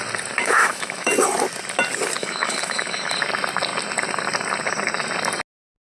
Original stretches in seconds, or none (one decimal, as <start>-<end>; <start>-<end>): 0.0-0.4; 1.1-2.2; 3.1-5.9

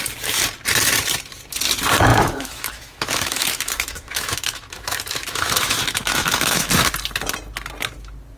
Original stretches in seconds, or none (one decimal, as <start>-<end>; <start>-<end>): 0.0-2.1; 6.7-8.4

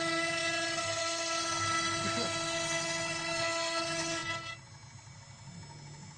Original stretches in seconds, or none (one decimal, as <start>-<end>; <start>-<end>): 0.0-6.2

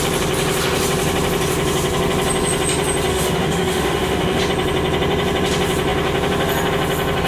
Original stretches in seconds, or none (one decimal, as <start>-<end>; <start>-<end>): 0.0-3.1; 4.4-7.3

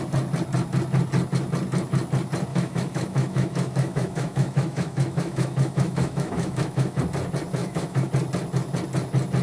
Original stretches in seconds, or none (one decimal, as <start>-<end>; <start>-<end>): 0.0-2.5; 7.0-7.6; 8.1-9.4

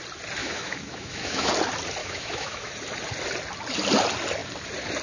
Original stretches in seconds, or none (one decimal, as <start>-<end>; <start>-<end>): 0.0-0.4; 1.5-2.0; 2.7-5.0

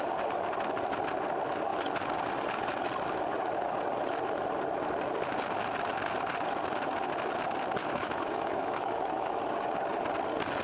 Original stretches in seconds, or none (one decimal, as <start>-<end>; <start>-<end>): 0.0-7.8; 9.4-10.6